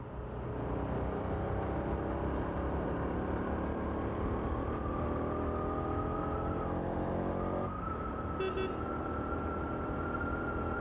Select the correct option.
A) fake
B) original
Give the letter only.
B